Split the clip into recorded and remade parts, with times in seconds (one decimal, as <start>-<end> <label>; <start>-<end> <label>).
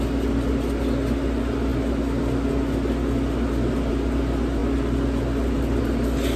0.0-6.4 recorded